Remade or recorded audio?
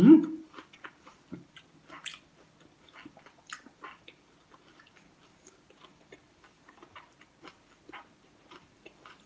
recorded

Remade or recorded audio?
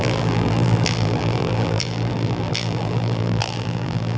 remade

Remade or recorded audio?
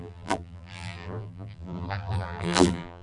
remade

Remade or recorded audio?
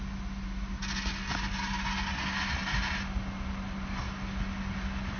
recorded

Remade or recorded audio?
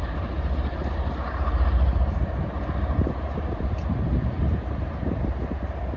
remade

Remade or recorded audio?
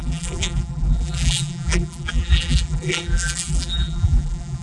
remade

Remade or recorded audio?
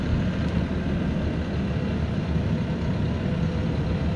recorded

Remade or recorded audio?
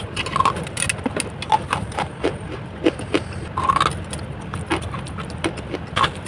recorded